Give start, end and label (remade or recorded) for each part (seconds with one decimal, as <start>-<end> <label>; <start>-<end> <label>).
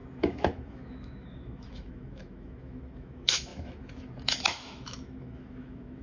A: 0.0-6.0 remade